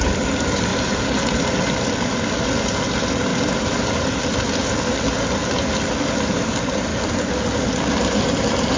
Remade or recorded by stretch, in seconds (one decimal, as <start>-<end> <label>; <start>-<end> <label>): 0.0-8.8 recorded